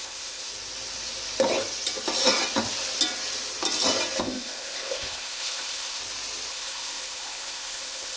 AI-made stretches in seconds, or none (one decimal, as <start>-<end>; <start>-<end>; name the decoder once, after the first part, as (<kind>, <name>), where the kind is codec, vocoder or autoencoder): 0.0-0.5 (codec, ZipCodec); 4.2-6.0; 6.5-8.2